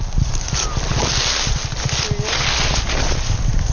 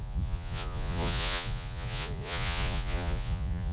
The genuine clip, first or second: first